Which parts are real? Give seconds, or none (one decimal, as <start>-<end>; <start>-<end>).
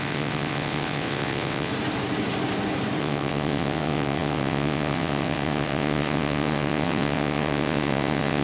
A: 1.7-3.0